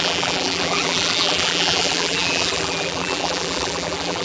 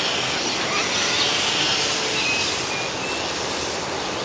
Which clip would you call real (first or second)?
second